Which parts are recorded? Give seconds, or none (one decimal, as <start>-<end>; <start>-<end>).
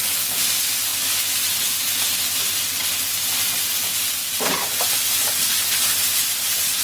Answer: 0.9-3.2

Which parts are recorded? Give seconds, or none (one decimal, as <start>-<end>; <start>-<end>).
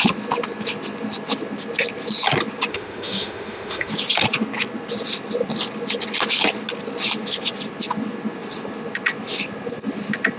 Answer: 0.0-2.7; 3.9-10.4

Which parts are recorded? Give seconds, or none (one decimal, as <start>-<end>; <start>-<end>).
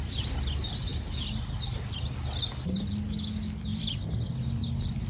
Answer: 0.0-5.1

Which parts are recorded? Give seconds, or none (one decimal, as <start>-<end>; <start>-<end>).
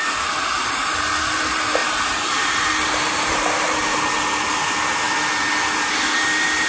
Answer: 3.9-6.7